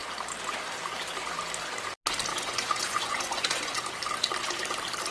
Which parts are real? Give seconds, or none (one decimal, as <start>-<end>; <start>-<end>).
0.0-2.3; 3.8-5.1